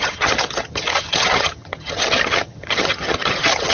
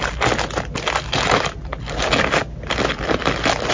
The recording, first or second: second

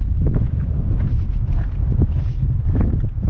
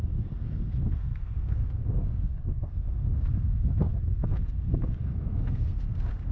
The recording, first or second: first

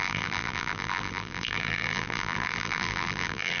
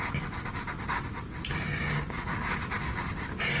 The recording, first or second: second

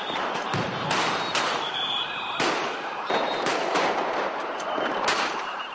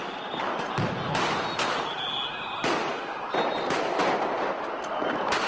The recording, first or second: second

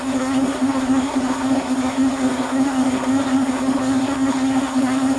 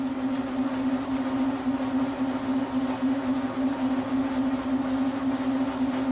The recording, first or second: second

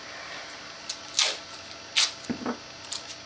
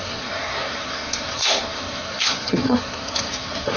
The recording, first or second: first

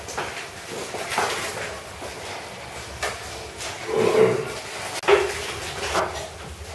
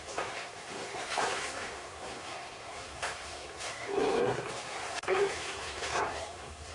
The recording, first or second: first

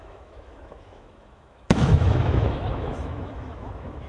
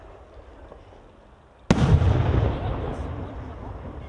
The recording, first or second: second